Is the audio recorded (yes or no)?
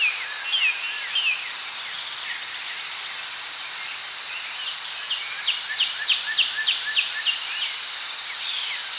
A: yes